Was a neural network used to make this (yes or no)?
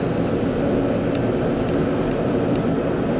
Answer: no